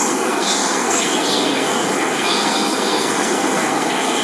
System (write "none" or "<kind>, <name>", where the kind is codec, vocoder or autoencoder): codec, SNAC